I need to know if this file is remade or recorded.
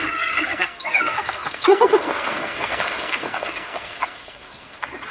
remade